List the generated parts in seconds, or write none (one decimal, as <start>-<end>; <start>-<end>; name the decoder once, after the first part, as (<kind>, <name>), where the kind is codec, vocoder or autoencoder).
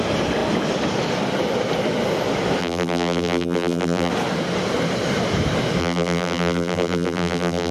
2.6-4.1 (vocoder, BigVGAN v2); 5.8-7.7